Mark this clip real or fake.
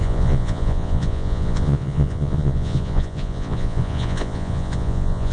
fake